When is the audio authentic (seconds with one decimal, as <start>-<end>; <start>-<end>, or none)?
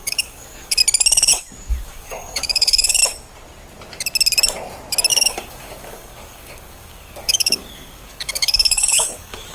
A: 0.8-1.7; 3.0-5.1